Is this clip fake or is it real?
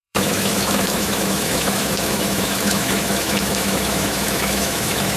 fake